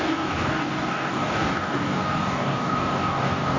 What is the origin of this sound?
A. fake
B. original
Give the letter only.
A